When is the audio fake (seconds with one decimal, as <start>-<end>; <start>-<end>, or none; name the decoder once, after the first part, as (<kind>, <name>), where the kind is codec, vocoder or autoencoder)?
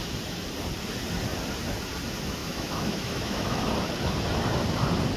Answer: 2.4-3.6 (autoencoder, DAC-VAE)